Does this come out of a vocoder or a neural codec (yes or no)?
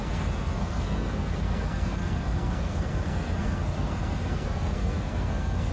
yes